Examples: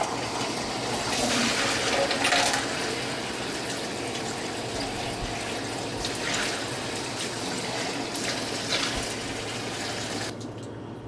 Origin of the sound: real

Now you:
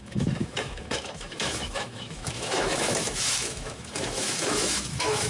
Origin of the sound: fake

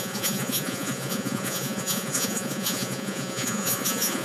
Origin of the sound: fake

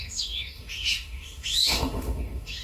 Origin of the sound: fake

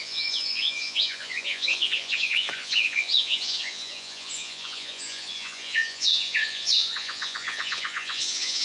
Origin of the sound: fake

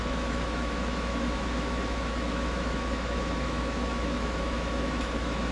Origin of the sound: fake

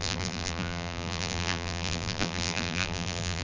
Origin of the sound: fake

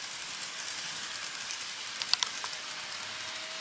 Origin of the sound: real